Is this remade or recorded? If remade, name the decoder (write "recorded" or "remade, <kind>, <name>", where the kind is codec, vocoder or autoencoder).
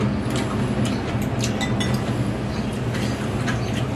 recorded